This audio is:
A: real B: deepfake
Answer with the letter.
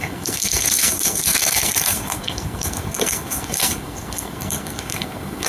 B